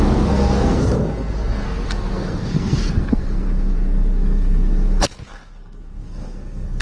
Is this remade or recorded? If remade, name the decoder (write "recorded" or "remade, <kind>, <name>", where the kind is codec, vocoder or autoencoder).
remade, codec, SNAC